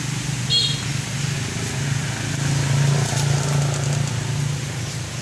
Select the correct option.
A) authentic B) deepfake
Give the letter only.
A